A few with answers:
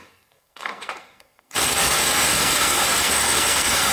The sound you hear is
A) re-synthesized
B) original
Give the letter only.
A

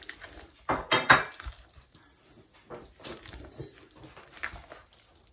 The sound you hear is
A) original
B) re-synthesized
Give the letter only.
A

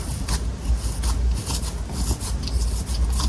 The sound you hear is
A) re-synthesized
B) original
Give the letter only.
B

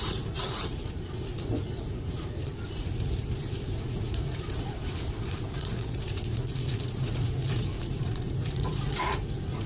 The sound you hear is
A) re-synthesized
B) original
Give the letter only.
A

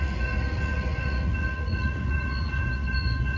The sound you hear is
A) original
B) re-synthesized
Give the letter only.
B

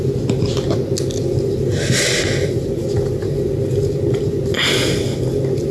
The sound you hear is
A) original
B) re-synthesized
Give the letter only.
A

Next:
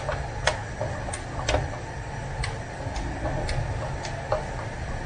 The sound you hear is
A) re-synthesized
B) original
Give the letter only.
B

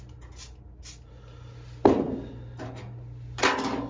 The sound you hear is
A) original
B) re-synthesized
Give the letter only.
A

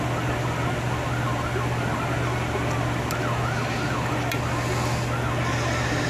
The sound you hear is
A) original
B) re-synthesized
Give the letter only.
A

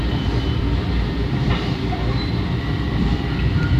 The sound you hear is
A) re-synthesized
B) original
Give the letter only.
A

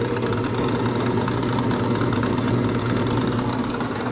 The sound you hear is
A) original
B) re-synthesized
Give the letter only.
A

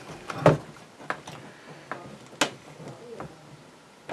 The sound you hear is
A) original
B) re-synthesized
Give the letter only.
A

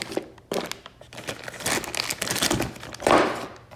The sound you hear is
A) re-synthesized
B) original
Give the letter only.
B